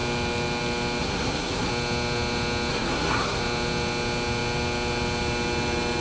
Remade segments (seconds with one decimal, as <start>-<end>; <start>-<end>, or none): 1.0-1.7; 2.7-3.4